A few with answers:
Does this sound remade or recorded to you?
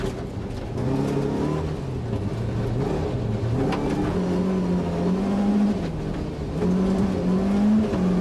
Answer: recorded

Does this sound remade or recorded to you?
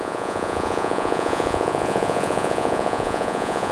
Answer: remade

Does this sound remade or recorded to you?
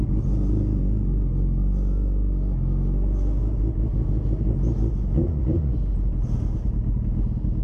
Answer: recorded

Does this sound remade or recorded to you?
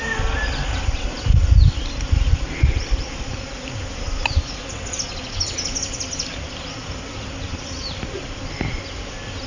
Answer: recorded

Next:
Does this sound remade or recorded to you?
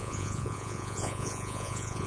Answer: remade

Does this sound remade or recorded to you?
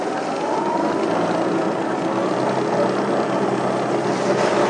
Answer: recorded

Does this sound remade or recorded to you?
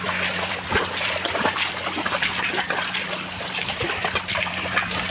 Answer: remade